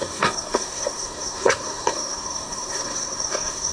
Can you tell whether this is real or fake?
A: fake